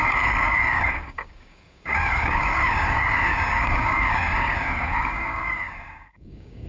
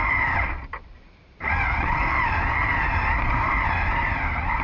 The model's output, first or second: first